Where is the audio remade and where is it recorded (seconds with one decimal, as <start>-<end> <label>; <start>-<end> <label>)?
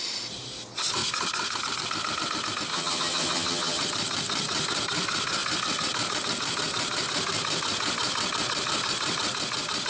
0.0-2.7 recorded; 2.7-3.8 remade; 3.8-9.9 recorded